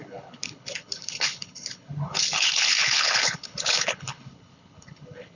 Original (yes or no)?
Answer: no